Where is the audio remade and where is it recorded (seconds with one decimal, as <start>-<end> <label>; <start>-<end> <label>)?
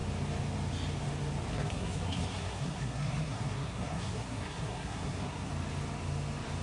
0.0-1.5 recorded; 1.5-5.5 remade; 5.5-6.6 recorded